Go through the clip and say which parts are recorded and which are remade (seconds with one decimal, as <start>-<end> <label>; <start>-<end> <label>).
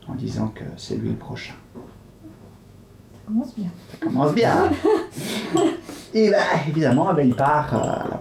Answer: 0.0-1.4 recorded; 1.4-5.0 remade; 5.0-6.3 recorded; 6.3-7.4 remade; 7.4-8.2 recorded